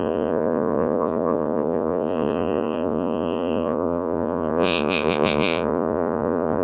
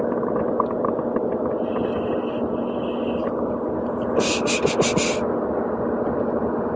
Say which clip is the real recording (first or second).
second